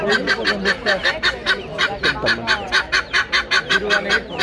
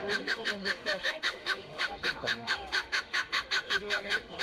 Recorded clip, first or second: first